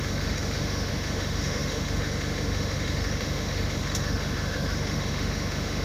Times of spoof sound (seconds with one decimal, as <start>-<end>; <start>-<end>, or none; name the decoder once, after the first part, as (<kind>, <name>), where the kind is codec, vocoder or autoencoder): 0.0-5.8 (autoencoder, DAC-VAE)